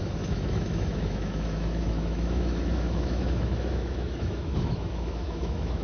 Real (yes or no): no